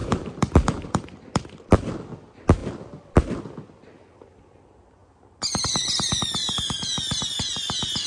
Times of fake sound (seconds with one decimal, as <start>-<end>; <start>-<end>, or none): 0.0-2.0; 2.6-3.1